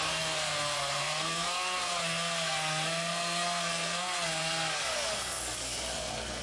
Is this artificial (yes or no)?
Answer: yes